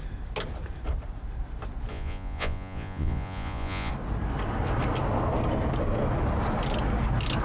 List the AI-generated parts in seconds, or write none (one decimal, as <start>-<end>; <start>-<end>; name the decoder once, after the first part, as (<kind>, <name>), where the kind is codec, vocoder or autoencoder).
1.9-3.9 (vocoder, Vocos)